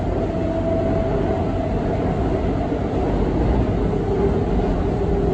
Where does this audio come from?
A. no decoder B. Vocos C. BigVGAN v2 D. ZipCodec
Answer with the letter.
A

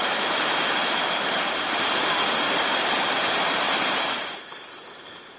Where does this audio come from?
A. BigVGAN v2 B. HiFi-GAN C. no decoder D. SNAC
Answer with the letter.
A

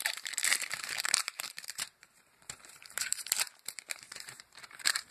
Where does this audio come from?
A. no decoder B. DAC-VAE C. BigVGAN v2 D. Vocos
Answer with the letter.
C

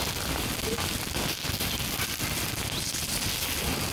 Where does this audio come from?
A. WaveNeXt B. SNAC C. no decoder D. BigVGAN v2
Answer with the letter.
C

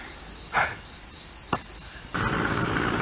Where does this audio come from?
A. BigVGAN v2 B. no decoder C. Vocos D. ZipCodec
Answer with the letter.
B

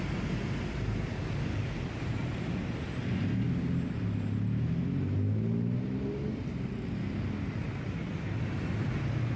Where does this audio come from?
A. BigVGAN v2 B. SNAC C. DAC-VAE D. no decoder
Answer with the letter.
D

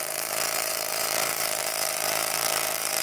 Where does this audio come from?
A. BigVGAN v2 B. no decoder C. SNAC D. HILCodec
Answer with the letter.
A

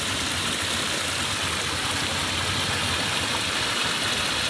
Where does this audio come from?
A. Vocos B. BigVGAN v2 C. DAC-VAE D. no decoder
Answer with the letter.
D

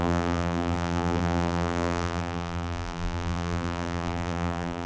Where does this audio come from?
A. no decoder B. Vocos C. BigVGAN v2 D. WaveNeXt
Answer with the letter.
C